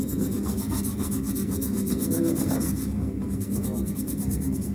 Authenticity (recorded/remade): remade